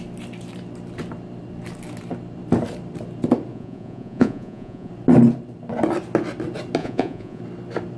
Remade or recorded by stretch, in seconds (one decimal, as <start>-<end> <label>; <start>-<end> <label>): 0.0-3.5 recorded; 3.5-4.9 remade; 4.9-6.8 recorded; 6.8-7.4 remade; 7.4-8.0 recorded